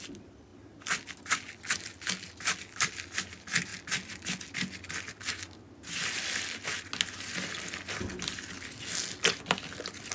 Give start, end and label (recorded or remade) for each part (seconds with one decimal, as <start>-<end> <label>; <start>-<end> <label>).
0.0-10.1 recorded